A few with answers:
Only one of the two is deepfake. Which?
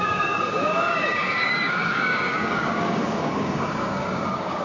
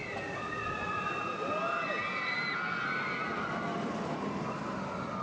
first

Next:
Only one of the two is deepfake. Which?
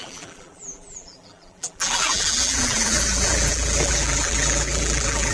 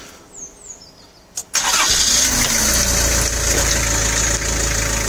first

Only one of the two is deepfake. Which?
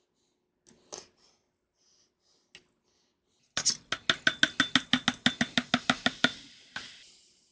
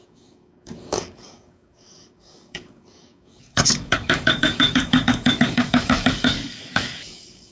second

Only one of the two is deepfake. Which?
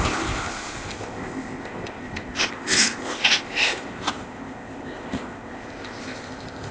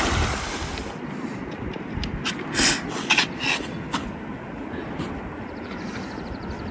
first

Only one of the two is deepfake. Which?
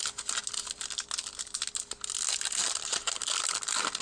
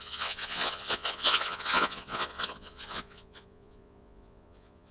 second